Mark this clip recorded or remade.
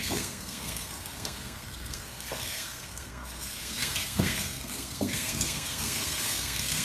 remade